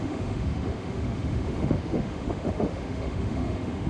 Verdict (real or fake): fake